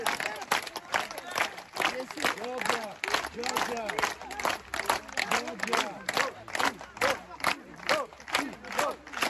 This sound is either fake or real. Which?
real